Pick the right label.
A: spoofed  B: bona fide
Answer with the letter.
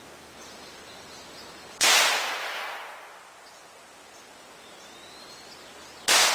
B